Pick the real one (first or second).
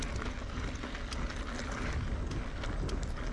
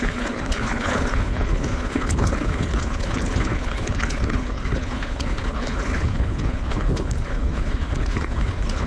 first